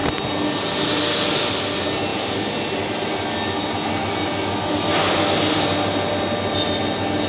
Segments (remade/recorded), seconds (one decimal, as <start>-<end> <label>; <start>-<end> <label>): 0.0-7.3 recorded